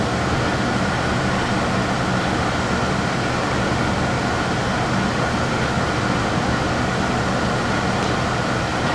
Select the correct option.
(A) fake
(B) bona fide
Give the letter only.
B